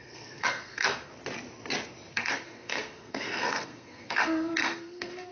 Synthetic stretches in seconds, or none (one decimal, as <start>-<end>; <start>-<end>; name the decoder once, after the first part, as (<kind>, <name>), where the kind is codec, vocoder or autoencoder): 0.0-1.1 (codec, SNAC); 2.1-5.3